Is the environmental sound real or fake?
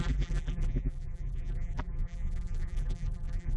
fake